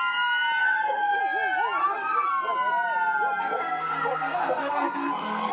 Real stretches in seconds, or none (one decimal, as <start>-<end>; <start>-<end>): 0.0-0.6; 1.2-1.8; 2.3-3.5